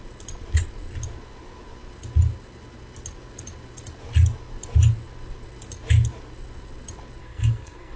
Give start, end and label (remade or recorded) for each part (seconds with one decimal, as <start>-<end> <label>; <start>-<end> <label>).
0.0-7.2 recorded; 7.2-8.0 remade